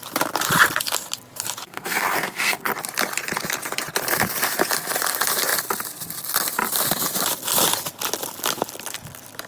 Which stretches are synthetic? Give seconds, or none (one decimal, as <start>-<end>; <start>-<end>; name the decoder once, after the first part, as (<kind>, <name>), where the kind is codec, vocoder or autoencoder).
1.6-2.7 (codec, SNAC)

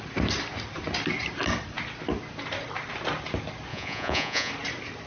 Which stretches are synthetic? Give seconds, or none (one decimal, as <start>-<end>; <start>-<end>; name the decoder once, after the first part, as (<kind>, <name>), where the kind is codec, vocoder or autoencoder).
3.7-4.5 (vocoder, Vocos)

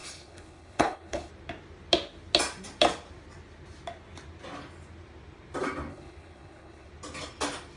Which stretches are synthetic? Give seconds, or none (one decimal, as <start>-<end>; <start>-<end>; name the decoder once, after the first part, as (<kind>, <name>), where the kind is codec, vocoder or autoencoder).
0.0-1.3 (codec, HILCodec); 5.9-6.9

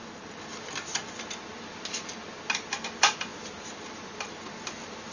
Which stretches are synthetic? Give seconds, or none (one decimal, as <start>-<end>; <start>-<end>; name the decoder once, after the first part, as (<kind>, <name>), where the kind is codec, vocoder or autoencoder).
none

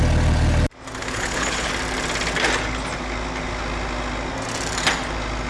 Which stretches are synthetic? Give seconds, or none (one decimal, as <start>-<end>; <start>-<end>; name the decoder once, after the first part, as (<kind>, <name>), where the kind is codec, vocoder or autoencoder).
1.0-1.7 (codec, HILCodec)